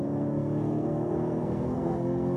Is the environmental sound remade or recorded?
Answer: remade